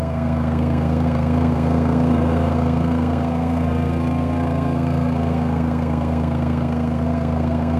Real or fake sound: fake